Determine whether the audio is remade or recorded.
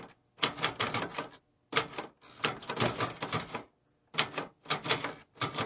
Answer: recorded